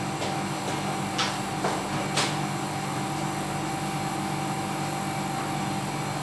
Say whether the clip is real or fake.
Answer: real